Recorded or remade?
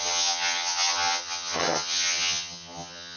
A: remade